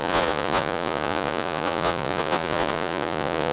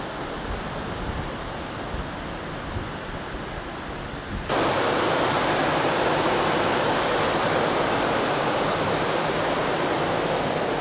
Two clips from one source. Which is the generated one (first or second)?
first